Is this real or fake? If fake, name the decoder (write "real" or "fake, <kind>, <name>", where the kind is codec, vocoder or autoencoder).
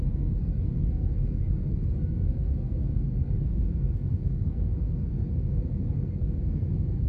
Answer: fake, codec, SNAC